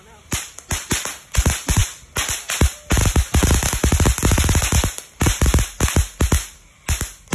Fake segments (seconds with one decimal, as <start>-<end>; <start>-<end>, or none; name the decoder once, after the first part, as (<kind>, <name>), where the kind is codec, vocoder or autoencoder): none